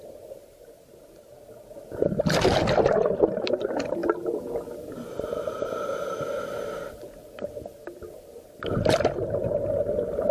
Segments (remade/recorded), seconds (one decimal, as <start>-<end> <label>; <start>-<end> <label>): 0.0-10.3 recorded